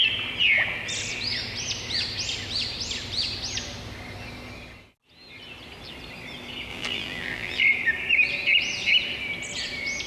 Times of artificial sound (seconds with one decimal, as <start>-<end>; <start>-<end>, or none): 6.7-7.6